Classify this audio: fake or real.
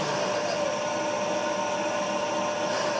real